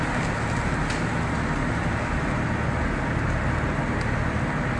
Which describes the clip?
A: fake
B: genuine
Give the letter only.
B